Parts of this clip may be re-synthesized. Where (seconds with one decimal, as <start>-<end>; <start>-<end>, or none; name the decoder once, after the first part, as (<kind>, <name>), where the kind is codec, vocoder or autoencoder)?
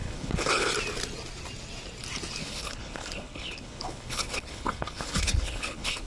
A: 0.0-0.7 (codec, HILCodec); 2.4-6.1